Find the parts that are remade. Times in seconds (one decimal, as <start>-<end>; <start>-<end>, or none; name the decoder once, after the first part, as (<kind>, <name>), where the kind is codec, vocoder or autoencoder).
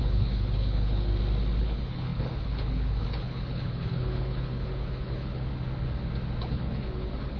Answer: 0.0-1.1 (codec, HILCodec); 1.6-5.5; 6.4-7.4